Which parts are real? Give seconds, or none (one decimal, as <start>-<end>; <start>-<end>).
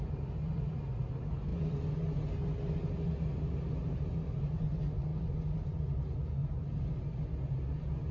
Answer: 0.0-8.1